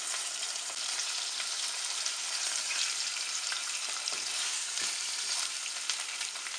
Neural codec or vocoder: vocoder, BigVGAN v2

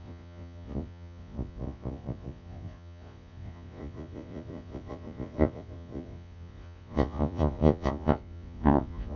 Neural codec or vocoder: vocoder, Vocos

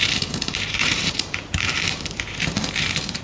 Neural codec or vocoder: vocoder, BigVGAN v2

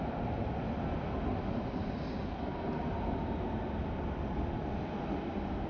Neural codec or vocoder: none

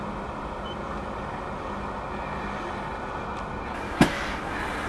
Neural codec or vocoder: none